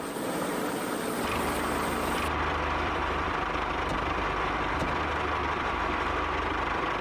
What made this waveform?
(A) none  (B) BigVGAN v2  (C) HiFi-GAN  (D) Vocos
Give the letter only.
B